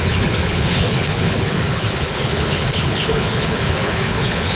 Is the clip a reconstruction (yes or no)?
yes